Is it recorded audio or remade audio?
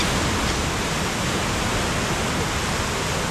recorded